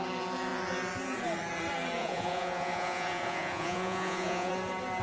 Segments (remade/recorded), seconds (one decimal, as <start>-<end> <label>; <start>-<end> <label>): 0.0-2.0 recorded; 2.0-4.5 remade; 4.5-5.0 recorded